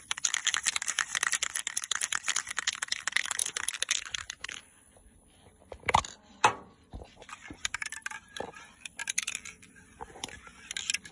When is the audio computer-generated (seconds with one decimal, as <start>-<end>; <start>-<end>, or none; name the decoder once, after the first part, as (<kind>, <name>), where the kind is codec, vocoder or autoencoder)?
none